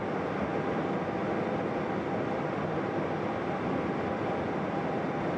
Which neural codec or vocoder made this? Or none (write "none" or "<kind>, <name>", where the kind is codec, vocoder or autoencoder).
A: none